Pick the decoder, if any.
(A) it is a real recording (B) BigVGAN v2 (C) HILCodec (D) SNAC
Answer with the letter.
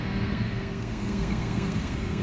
D